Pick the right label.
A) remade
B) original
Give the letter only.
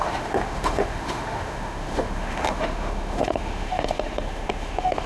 A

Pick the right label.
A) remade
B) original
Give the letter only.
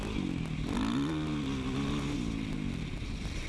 B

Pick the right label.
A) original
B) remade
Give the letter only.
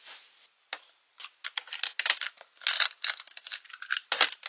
A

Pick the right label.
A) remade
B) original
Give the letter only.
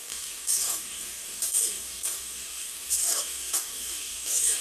A